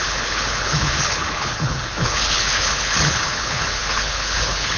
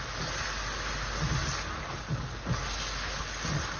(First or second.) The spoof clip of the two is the first